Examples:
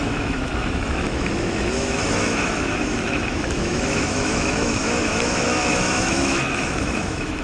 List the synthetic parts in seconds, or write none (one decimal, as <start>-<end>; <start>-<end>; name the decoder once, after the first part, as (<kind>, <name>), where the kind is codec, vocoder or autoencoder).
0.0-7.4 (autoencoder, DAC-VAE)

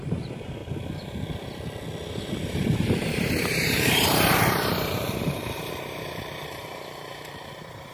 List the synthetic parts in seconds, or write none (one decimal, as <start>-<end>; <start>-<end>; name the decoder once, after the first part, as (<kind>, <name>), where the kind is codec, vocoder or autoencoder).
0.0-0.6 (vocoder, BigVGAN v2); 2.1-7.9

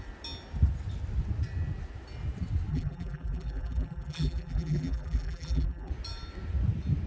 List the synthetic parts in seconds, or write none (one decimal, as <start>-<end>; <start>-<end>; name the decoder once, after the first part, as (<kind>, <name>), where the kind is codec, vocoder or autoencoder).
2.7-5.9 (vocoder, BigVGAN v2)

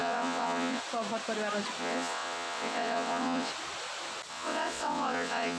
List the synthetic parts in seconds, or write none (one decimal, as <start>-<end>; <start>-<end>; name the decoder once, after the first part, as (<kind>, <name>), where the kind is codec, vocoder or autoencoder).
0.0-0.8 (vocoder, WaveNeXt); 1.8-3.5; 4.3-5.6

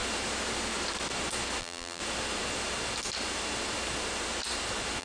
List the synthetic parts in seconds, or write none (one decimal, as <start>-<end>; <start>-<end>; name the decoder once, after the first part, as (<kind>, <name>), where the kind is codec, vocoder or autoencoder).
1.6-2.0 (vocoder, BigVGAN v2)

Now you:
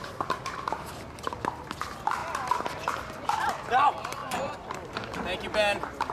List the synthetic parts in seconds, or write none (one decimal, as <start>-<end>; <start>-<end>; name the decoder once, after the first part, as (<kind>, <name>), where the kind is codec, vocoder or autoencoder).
0.0-0.9 (vocoder, BigVGAN v2); 4.2-4.9